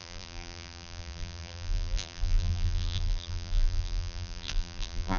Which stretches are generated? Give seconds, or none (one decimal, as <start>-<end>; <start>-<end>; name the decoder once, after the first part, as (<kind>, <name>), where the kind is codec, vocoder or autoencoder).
0.0-5.2 (vocoder, BigVGAN v2)